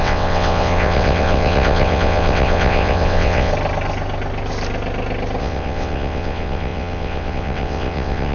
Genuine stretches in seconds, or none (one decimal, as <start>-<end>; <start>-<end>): 3.5-5.4